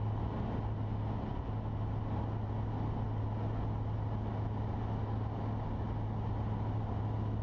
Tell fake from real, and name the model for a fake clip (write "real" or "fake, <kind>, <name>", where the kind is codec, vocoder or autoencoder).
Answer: real